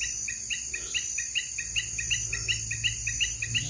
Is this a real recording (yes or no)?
yes